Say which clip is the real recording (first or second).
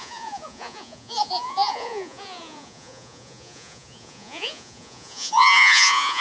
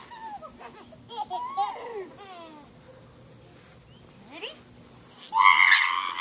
second